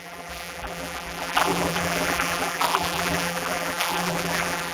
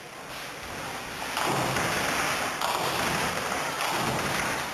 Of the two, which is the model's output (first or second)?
first